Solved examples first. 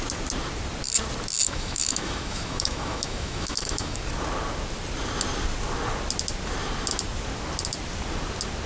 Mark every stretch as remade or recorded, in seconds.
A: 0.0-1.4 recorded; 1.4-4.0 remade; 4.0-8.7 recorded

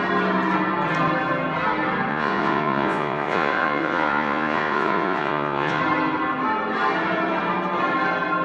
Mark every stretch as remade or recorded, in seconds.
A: 0.0-2.1 recorded; 2.1-5.8 remade; 5.8-8.4 recorded

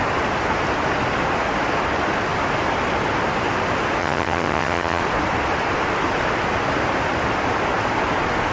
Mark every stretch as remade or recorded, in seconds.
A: 0.0-4.0 recorded; 4.0-5.0 remade; 5.0-8.5 recorded

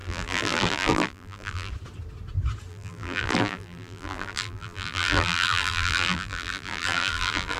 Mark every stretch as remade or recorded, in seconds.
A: 0.0-1.7 remade; 1.7-2.7 recorded; 2.7-7.6 remade